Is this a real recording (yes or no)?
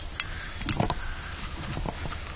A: yes